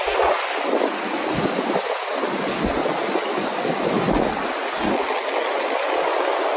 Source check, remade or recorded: recorded